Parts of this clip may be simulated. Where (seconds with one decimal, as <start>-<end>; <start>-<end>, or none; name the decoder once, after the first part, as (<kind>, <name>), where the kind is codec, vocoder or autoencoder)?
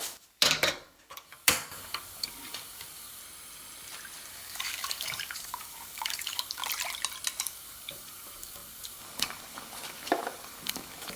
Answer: 0.0-3.2 (codec, DAC); 4.3-6.6; 7.4-11.2